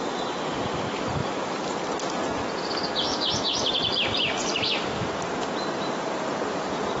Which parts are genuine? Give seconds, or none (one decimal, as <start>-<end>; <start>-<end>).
0.0-3.1